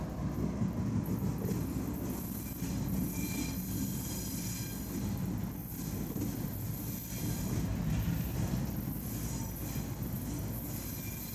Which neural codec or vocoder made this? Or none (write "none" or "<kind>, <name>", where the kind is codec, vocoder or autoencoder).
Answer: none